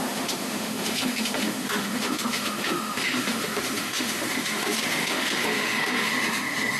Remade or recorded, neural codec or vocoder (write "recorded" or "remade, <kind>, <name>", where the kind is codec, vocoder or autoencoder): remade, autoencoder, DAC-VAE